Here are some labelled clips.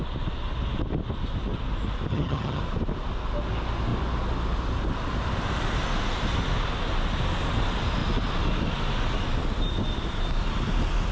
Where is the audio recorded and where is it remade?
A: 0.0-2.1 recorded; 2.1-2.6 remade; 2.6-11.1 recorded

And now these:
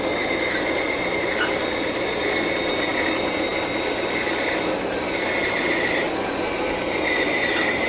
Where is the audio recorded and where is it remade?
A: 0.0-7.9 recorded

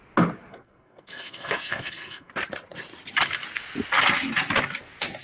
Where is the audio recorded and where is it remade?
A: 0.0-0.5 recorded; 0.5-2.3 remade; 2.3-5.2 recorded

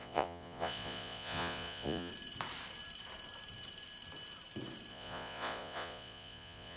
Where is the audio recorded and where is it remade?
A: 0.0-2.1 remade; 2.1-4.9 recorded; 4.9-6.8 remade

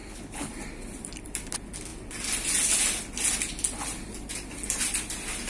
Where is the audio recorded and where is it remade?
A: 0.0-0.5 remade; 0.5-5.5 recorded